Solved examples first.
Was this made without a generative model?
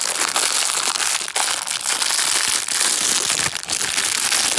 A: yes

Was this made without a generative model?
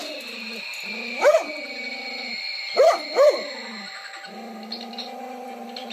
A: yes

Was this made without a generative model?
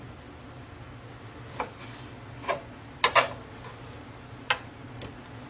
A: yes